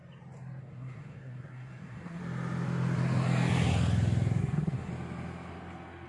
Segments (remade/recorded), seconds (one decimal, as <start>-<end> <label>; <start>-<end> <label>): 0.0-0.6 recorded; 0.6-2.2 remade; 2.2-4.4 recorded; 4.4-4.9 remade; 4.9-6.1 recorded

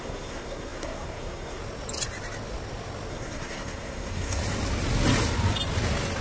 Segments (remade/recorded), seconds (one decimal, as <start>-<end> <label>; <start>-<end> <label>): 0.0-1.6 remade; 1.6-3.1 recorded; 3.1-4.4 remade; 4.4-6.2 recorded

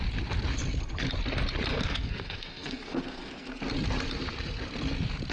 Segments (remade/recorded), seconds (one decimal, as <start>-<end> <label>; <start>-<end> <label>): 0.0-1.7 recorded; 1.7-3.6 remade; 3.6-5.3 recorded

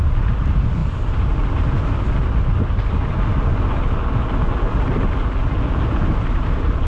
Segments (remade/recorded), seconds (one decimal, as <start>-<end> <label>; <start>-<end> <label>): 0.0-6.9 recorded